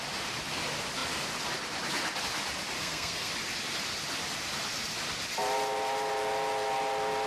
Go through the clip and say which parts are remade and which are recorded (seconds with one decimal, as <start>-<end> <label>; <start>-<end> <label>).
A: 0.0-2.8 recorded; 2.8-3.3 remade; 3.3-7.3 recorded